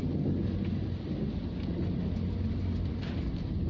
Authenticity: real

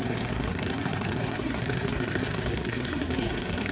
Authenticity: fake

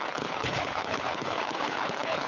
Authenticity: fake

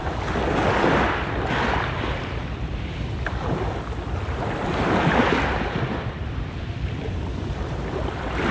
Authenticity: fake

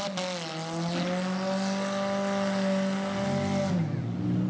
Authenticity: real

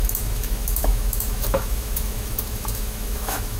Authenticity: fake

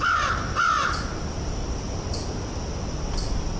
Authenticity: real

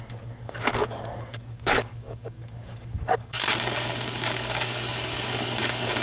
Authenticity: fake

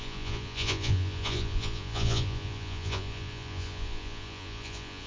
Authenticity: fake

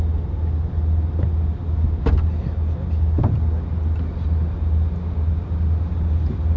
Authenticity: real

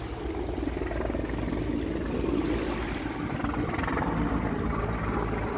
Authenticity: real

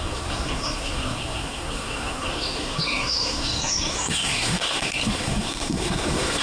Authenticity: fake